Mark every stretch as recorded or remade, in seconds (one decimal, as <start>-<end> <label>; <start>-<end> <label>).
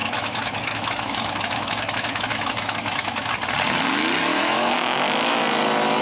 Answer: 0.0-3.3 remade; 3.3-4.3 recorded; 4.3-5.4 remade; 5.4-6.0 recorded